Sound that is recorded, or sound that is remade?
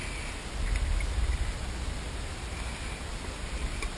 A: recorded